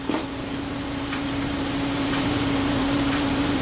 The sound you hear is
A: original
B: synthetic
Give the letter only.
B